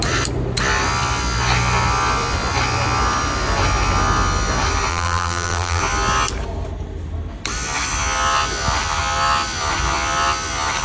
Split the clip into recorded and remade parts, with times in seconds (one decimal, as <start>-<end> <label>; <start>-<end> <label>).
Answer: 0.0-4.9 recorded; 4.9-5.8 remade; 5.8-10.8 recorded